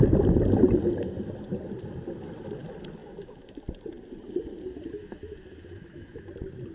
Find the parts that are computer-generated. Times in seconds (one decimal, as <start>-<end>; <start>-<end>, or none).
3.0-3.6; 5.0-6.3